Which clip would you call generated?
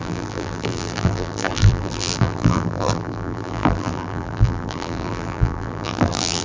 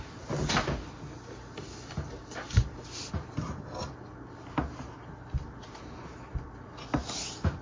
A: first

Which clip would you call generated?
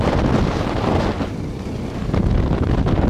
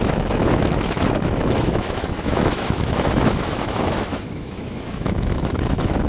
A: second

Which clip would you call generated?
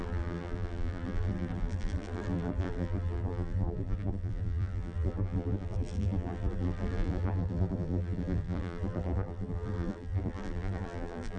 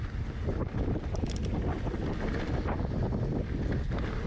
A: first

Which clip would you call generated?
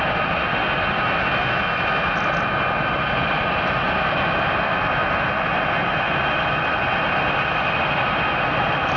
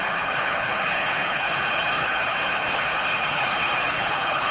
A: second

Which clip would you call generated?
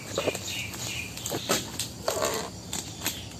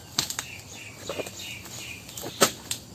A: first